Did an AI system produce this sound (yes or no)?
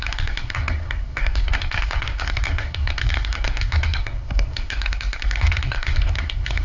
yes